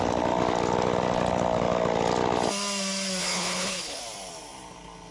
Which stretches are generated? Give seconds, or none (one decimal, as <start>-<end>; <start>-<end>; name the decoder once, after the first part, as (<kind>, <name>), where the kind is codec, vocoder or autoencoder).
3.2-4.0 (codec, HILCodec)